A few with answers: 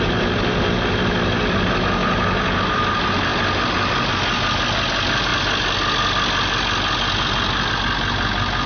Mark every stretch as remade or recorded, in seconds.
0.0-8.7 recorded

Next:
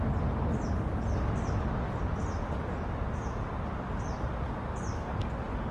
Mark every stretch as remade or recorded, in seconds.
0.0-0.9 recorded; 0.9-4.3 remade; 4.3-5.7 recorded

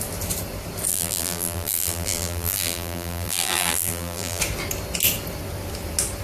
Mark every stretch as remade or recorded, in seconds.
0.0-0.9 recorded; 0.9-4.4 remade; 4.4-6.2 recorded

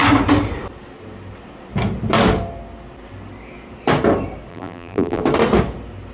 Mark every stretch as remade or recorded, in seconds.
0.0-4.5 recorded; 4.5-5.2 remade; 5.2-6.1 recorded

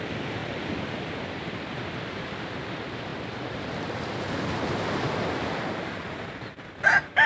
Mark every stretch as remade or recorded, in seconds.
0.0-7.3 recorded

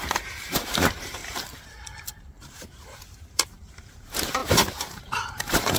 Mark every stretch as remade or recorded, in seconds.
0.0-1.2 remade; 1.2-2.1 recorded; 2.1-5.8 remade

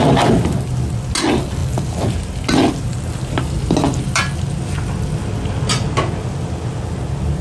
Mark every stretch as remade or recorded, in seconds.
0.0-7.4 recorded